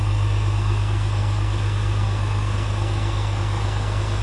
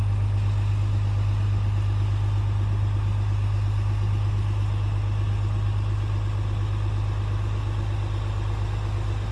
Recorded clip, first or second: second